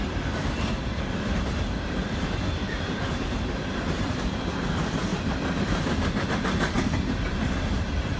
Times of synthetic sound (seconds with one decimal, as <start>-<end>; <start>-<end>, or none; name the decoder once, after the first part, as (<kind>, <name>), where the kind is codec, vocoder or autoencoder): 0.0-0.8 (vocoder, BigVGAN v2); 1.9-8.2